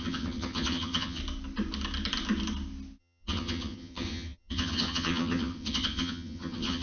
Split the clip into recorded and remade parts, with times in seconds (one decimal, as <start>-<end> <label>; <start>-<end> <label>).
0.0-1.2 remade; 1.2-3.0 recorded; 3.0-6.8 remade